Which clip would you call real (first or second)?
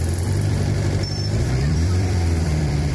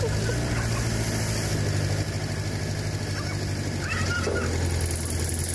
second